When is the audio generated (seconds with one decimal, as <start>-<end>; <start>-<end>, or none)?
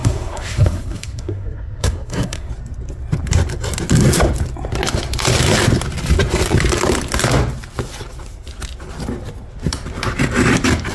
0.0-2.5